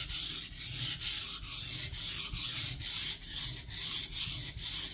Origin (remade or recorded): recorded